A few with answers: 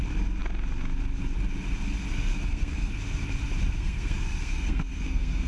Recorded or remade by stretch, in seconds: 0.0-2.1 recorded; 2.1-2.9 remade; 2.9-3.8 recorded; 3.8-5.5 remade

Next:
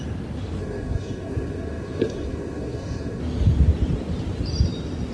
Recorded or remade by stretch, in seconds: 0.0-0.6 recorded; 0.6-3.2 remade; 3.2-5.1 recorded

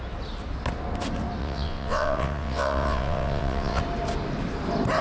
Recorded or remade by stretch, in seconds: 0.0-1.4 recorded; 1.4-3.8 remade; 3.8-5.0 recorded

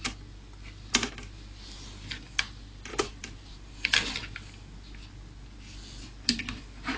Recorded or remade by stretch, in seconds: 0.0-2.9 recorded; 2.9-4.2 remade; 4.2-7.0 recorded

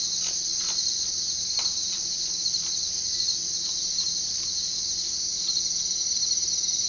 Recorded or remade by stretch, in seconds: 0.0-6.9 recorded